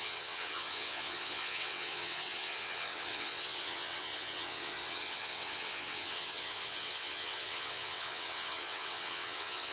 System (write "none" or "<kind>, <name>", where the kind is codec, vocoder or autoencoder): vocoder, WaveNeXt